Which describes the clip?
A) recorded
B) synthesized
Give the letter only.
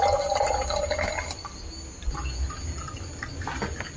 A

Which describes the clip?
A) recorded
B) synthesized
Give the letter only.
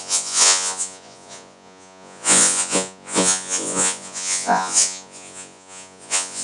B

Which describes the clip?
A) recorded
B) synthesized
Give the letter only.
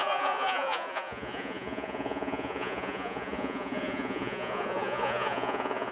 B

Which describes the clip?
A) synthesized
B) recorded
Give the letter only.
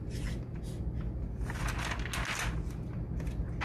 B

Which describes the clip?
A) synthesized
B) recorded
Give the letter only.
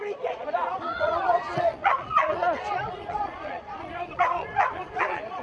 A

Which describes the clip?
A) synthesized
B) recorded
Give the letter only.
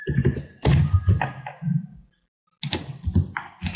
B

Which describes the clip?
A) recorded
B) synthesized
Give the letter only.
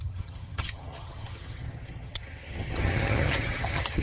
B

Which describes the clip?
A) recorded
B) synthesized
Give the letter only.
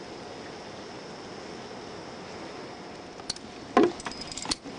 A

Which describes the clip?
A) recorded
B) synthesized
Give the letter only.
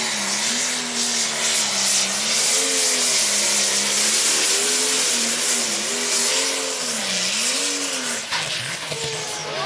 A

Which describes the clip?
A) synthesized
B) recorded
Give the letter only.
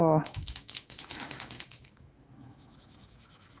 A